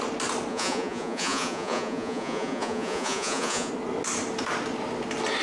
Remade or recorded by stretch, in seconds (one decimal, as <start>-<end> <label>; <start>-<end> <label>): 0.0-0.5 recorded; 0.5-3.7 remade; 3.7-5.4 recorded